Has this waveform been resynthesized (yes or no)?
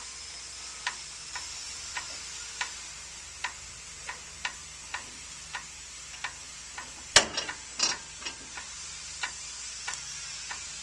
no